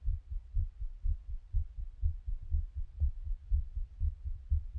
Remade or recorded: remade